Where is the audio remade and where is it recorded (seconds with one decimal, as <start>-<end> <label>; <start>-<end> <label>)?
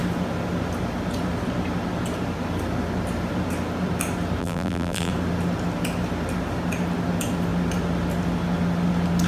0.0-4.4 recorded; 4.4-5.1 remade; 5.1-9.3 recorded